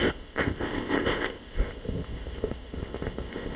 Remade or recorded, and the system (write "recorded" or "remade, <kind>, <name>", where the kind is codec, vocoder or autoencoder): remade, codec, ZipCodec